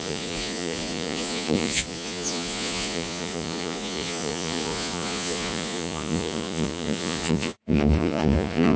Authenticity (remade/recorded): remade